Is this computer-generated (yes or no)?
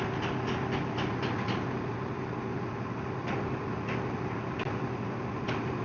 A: no